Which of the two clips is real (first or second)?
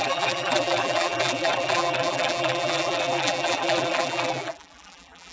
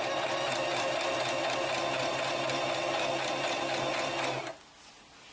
second